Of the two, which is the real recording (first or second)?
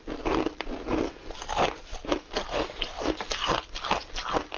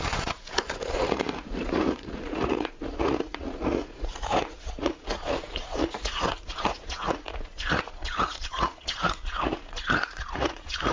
first